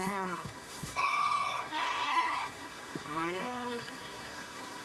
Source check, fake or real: fake